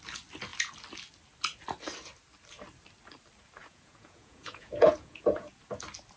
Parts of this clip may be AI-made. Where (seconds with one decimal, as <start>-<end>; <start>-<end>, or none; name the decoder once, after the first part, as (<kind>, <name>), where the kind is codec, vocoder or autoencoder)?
3.6-5.5 (vocoder, Vocos)